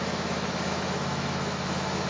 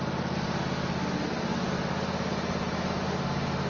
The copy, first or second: first